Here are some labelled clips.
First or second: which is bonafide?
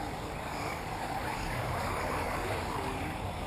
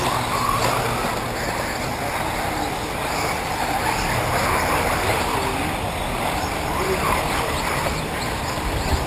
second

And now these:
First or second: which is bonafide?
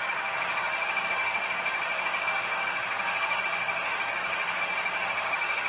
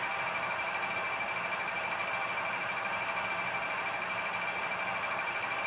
second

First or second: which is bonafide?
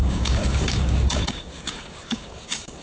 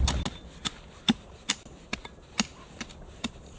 second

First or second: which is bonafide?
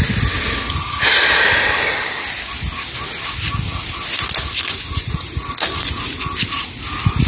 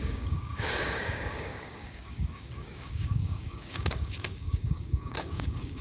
first